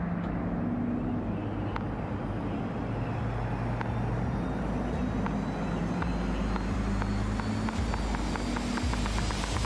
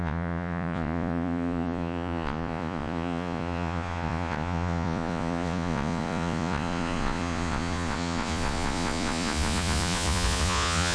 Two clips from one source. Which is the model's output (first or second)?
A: second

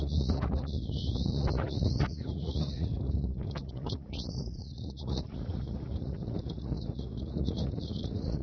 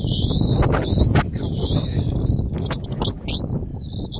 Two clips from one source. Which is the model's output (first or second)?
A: first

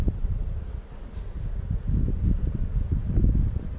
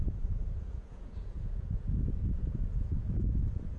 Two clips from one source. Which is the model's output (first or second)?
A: second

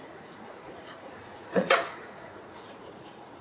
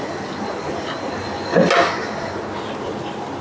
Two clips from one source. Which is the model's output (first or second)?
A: first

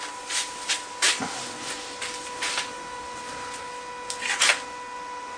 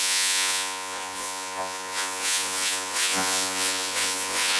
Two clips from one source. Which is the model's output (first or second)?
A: second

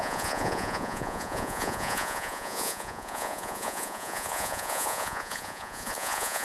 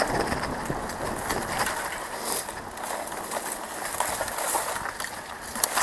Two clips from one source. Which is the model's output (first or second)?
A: first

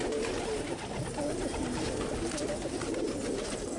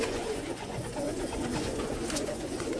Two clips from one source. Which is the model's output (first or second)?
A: second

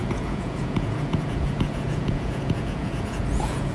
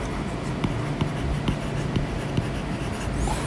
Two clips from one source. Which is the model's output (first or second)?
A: first